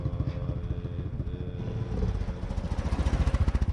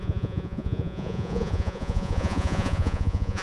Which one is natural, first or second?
first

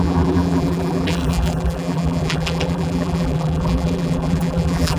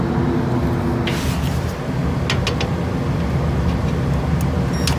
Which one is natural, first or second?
second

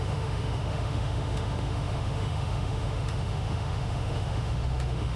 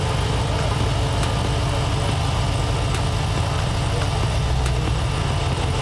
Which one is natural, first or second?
second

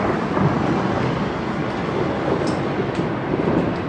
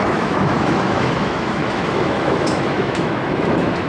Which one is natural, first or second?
first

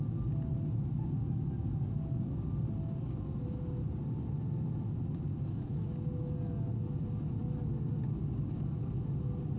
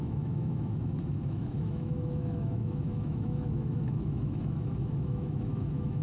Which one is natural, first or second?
first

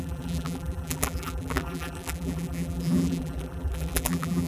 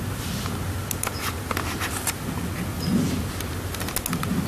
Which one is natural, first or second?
second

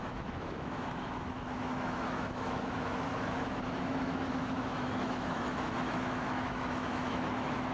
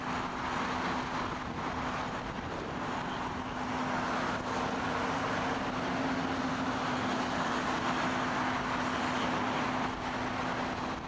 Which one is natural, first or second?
second